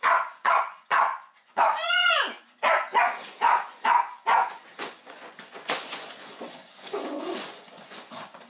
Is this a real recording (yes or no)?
no